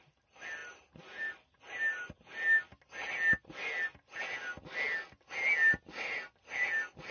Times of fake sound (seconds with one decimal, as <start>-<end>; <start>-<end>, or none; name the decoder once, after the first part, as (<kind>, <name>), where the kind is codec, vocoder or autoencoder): none